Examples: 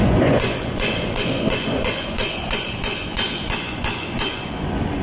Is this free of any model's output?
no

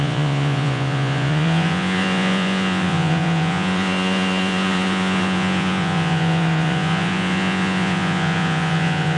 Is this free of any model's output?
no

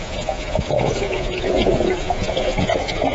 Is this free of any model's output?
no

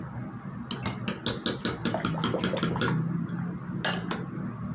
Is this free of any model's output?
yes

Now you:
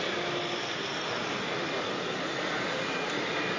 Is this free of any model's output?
yes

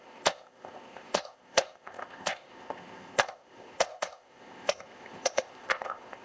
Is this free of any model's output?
no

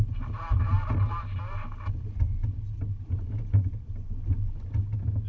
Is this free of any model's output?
yes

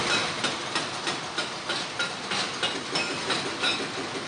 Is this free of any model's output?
yes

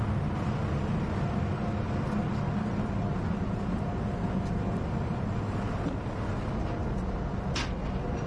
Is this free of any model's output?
yes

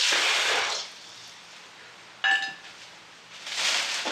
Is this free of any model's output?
yes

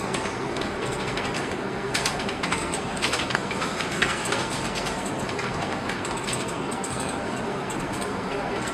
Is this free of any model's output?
no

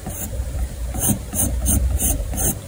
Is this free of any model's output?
no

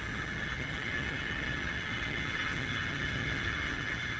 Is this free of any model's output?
no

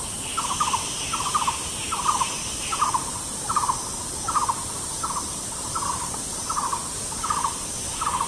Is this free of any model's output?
no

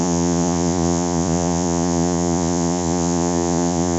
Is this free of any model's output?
no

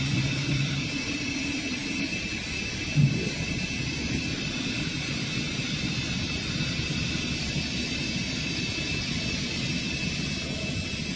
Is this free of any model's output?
yes